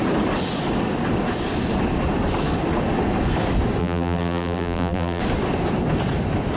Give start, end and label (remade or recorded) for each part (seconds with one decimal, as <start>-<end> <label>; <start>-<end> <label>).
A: 0.0-3.8 recorded; 3.8-5.2 remade; 5.2-6.6 recorded